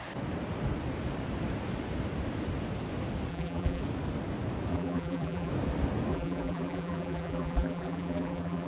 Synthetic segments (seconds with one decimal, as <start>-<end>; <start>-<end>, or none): 3.3-3.8; 4.7-5.5; 6.1-8.7